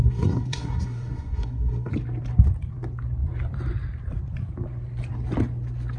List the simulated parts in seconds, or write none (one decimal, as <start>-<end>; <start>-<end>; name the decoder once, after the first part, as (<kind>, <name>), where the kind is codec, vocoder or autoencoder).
0.0-1.9 (codec, SNAC)